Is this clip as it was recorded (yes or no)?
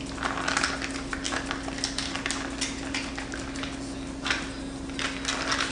yes